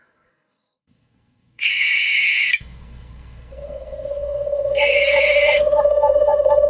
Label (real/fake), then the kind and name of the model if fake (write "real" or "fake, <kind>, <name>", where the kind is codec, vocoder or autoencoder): fake, codec, SNAC